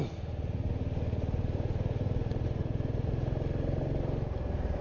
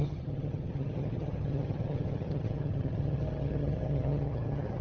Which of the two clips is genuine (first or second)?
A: first